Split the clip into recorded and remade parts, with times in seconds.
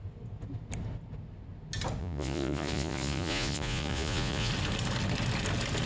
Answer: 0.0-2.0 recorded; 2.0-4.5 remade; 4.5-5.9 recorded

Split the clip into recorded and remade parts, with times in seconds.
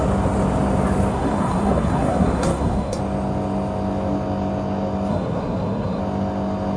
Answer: 0.0-1.1 recorded; 1.1-3.0 remade; 3.0-5.1 recorded; 5.1-6.0 remade; 6.0-6.8 recorded